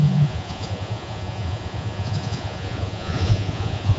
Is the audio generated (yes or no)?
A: yes